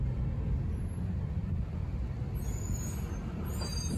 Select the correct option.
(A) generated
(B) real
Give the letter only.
B